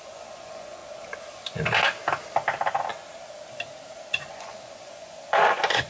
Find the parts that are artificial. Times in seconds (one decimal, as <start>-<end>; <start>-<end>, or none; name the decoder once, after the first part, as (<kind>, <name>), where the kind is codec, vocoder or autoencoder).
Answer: 0.0-0.8 (vocoder, Vocos); 4.3-5.9